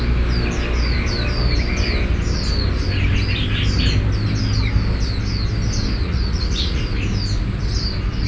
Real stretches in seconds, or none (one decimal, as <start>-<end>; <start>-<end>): 0.0-6.0; 6.8-8.3